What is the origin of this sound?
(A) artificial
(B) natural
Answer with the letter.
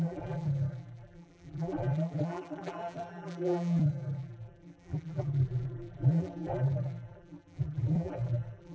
A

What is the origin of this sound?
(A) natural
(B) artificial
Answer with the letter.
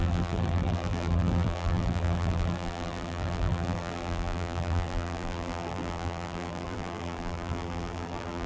B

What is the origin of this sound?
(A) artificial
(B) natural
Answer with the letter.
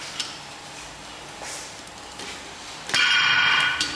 B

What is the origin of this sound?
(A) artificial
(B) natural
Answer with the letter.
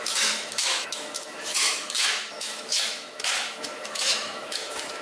A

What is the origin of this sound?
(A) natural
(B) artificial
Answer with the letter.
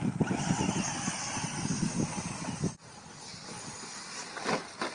A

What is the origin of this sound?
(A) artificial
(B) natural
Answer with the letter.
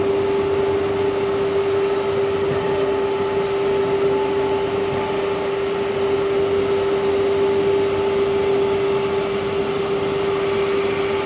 B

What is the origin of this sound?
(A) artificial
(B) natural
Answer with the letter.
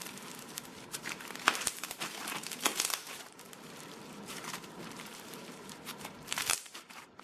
A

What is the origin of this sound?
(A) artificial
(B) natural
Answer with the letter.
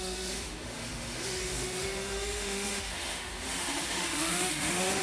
A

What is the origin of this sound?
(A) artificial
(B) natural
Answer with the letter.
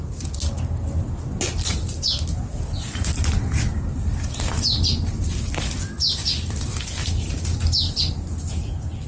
B